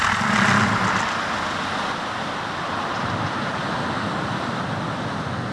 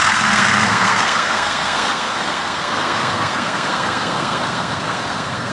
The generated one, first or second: second